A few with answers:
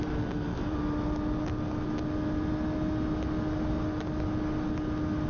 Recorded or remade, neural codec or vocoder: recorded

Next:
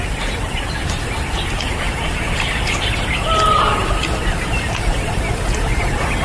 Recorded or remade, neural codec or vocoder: recorded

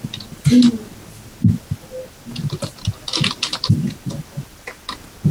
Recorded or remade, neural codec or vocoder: recorded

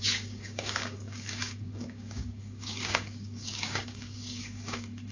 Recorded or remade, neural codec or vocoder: remade, codec, DAC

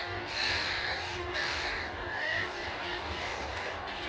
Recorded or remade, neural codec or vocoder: remade, codec, DAC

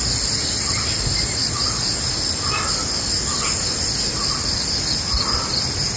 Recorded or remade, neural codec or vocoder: recorded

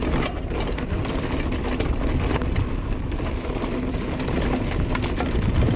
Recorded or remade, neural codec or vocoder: recorded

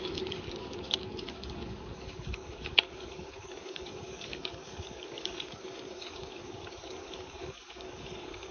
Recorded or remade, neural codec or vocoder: remade, codec, DAC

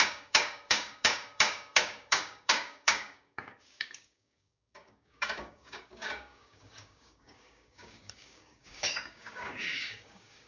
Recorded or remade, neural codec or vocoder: remade, codec, DAC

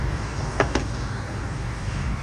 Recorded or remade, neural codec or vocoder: remade, codec, DAC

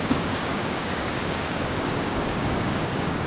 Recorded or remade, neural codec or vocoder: remade, codec, DAC